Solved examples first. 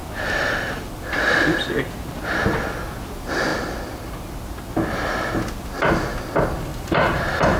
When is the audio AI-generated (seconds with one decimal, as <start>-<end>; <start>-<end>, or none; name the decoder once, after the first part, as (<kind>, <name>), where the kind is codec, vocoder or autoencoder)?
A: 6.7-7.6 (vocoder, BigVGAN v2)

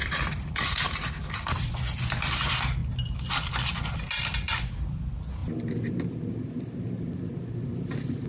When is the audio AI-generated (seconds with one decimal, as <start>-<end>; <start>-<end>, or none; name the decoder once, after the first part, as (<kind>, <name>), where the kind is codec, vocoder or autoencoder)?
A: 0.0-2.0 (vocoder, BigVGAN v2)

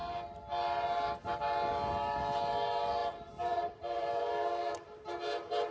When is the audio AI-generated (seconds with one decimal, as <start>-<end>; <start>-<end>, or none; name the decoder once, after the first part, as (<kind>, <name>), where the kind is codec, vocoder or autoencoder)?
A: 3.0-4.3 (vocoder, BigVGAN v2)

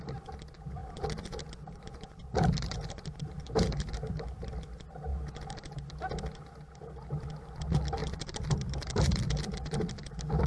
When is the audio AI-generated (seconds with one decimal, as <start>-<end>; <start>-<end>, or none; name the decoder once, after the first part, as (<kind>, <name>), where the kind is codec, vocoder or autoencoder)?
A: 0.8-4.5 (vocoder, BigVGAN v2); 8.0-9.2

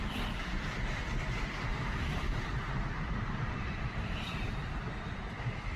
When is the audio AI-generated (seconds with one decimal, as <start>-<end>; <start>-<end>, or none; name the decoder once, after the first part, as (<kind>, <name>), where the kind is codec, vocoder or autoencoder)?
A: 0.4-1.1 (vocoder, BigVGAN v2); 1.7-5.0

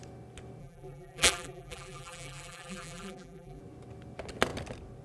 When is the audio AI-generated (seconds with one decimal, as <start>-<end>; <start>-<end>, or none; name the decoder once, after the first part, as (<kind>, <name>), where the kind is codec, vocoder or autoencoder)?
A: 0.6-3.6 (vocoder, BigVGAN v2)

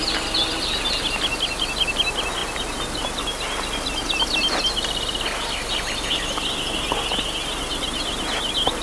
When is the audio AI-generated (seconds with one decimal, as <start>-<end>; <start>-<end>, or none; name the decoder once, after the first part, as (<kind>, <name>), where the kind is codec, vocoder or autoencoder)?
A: none